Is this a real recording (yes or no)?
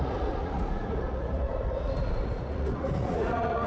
no